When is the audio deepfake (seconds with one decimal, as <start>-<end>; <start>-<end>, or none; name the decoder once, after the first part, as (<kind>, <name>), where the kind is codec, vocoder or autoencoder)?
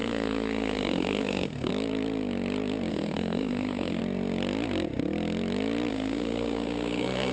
0.0-1.7 (codec, SNAC); 2.9-4.0; 5.9-7.3